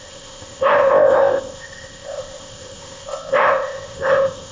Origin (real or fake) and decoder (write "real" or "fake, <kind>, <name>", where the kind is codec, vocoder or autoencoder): fake, codec, ZipCodec